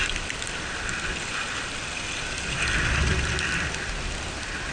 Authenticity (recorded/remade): recorded